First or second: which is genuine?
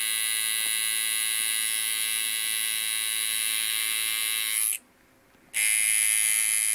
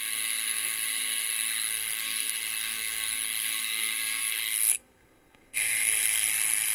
first